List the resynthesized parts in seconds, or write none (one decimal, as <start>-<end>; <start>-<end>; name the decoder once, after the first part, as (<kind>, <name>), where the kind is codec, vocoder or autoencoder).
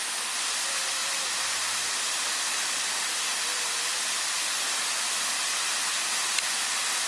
none